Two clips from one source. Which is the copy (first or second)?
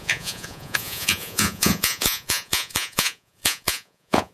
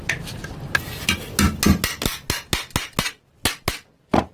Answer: first